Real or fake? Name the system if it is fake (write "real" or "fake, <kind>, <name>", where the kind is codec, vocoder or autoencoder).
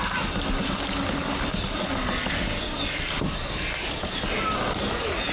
real